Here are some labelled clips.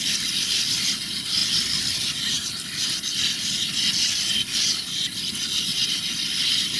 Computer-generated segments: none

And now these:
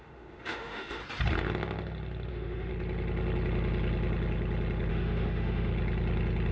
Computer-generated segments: 0.0-1.0; 2.3-2.7; 4.9-5.7

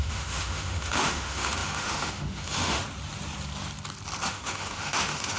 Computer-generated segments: 0.0-2.8; 4.3-5.4

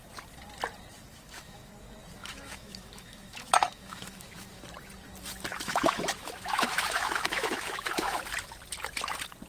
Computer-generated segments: 1.1-1.7; 2.2-4.6; 5.5-8.2

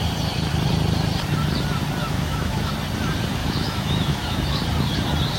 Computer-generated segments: 2.0-2.7; 3.4-4.6

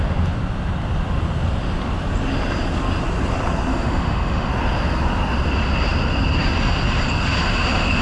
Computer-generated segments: 3.7-4.5

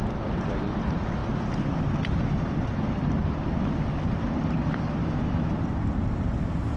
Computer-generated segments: 5.0-5.6

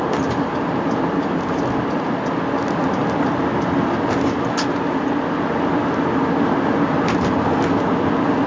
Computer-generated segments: none